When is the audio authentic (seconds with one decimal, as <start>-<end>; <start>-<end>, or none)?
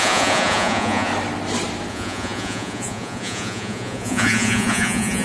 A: 1.1-1.9